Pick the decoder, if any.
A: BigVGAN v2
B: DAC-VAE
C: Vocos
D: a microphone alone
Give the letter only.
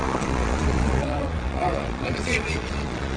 C